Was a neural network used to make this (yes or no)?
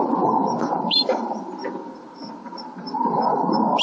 no